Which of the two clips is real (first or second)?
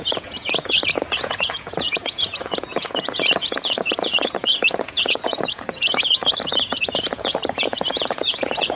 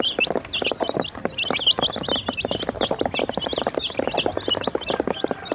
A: second